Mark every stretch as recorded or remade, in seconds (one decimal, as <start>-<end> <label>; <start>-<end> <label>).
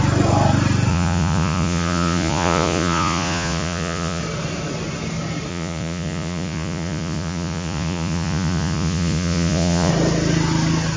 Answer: 0.0-0.9 recorded; 0.9-4.2 remade; 4.2-5.5 recorded; 5.5-9.9 remade; 9.9-11.0 recorded